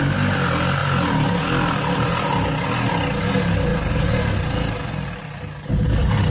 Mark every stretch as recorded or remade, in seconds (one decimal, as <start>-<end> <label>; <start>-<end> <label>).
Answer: 0.0-6.3 recorded